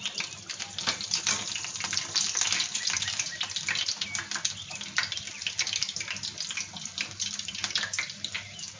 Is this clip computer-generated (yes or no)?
no